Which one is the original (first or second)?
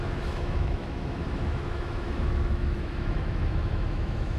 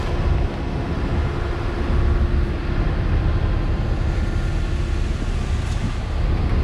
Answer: second